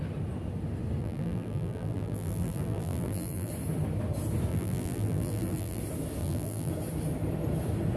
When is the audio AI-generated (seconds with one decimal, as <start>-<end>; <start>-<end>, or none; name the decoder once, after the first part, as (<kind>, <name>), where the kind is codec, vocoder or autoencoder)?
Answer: 1.0-3.5 (vocoder, BigVGAN v2); 4.5-5.8; 6.2-6.7